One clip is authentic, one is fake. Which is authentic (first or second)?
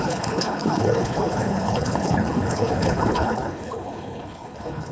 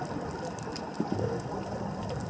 second